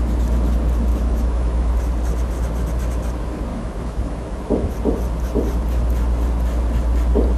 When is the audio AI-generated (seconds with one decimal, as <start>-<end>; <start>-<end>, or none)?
0.9-1.7; 3.5-4.7